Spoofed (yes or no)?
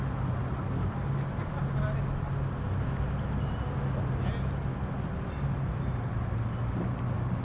no